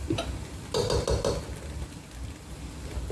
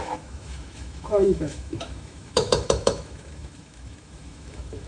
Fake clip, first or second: second